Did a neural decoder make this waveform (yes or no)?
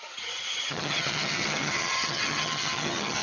yes